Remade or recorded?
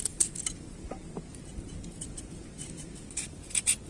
recorded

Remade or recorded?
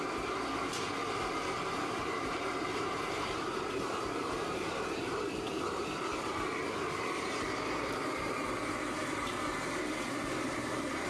remade